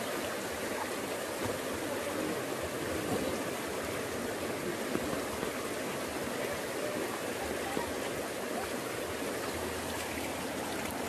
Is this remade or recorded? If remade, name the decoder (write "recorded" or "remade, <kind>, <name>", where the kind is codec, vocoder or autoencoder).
recorded